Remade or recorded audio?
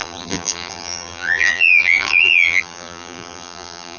remade